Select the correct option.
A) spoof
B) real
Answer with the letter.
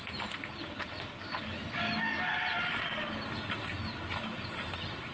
B